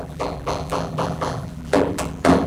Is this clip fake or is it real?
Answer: fake